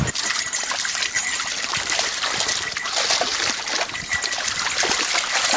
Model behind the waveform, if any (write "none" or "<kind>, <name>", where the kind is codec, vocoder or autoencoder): none